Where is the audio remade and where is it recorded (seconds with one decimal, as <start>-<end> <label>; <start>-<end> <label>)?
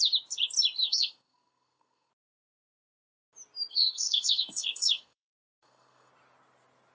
0.0-0.8 recorded; 0.8-2.1 remade; 2.1-3.7 recorded; 3.7-6.1 remade; 6.1-6.9 recorded